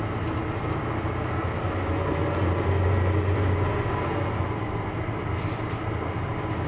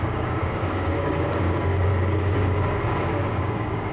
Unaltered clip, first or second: first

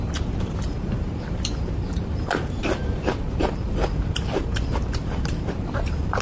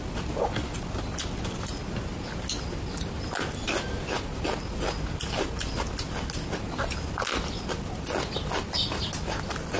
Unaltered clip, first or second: second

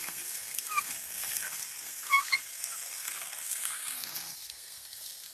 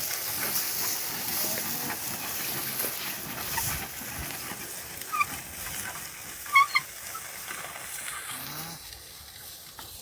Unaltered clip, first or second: second